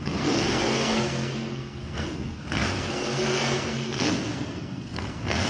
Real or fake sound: fake